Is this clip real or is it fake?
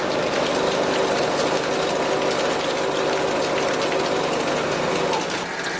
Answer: real